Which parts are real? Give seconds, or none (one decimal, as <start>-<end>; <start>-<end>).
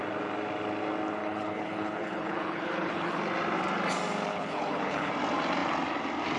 0.0-1.2; 3.2-4.3; 5.1-6.4